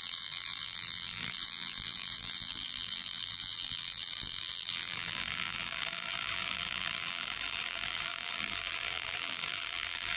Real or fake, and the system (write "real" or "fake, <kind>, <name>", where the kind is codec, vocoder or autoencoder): fake, vocoder, BigVGAN v2